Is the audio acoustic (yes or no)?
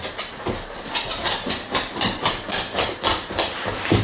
no